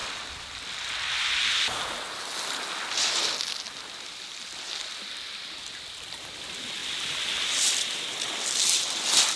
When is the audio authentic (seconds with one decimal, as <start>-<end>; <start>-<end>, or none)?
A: 0.0-4.8; 6.8-7.6